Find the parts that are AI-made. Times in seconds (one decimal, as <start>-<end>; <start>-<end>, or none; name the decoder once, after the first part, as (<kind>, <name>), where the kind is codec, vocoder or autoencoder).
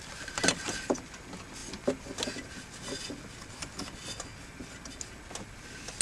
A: none